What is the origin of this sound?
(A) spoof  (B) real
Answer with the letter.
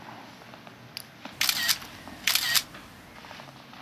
B